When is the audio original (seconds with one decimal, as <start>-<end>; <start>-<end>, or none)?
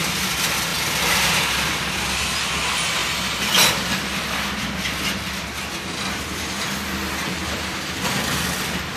0.0-9.0